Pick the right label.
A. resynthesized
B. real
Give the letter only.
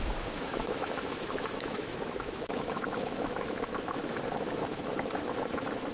A